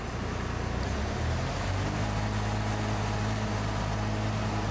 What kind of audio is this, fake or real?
real